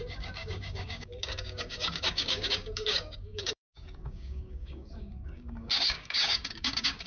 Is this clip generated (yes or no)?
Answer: yes